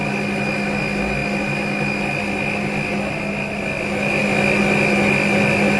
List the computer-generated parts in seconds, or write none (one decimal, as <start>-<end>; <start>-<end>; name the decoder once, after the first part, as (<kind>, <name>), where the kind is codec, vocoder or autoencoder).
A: 0.0-4.2 (vocoder, BigVGAN v2)